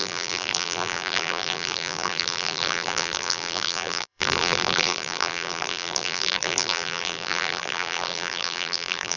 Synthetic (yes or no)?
yes